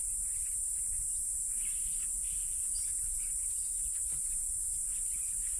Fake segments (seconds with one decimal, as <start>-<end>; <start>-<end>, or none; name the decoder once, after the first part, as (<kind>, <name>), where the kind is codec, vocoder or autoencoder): none